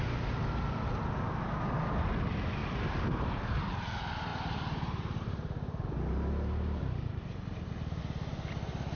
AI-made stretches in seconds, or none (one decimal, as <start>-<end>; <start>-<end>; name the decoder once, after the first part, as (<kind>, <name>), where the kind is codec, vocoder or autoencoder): 2.6-3.6 (vocoder, BigVGAN v2); 4.3-8.0